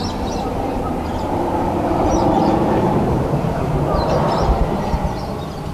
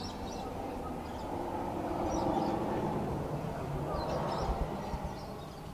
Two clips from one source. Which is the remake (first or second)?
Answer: first